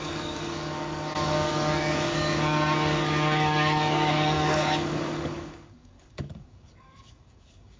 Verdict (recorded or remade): remade